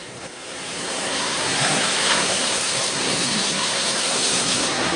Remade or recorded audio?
remade